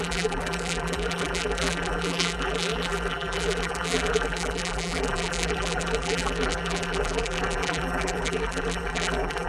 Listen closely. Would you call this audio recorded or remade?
remade